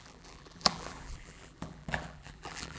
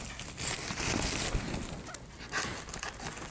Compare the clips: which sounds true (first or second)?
second